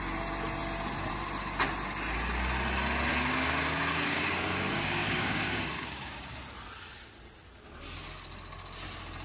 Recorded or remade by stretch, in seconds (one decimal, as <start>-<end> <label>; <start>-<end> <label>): 0.0-3.1 recorded; 3.1-6.3 remade; 6.3-9.2 recorded